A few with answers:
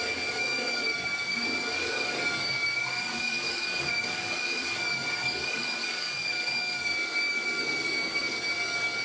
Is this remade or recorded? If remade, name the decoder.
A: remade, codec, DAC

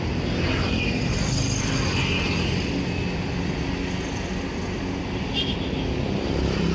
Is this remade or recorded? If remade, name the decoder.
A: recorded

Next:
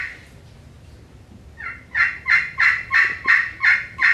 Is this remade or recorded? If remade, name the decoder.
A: recorded